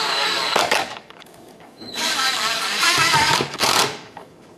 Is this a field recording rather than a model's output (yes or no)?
no